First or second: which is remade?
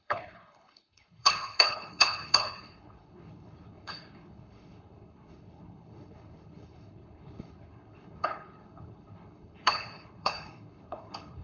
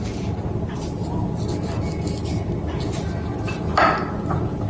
first